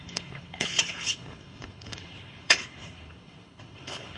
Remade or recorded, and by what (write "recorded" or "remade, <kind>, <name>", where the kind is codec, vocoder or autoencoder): remade, codec, HILCodec